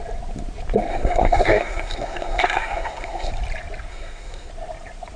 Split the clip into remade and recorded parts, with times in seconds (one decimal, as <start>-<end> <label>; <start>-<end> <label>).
0.0-0.9 recorded; 0.9-3.3 remade; 3.3-3.9 recorded; 3.9-4.5 remade; 4.5-5.2 recorded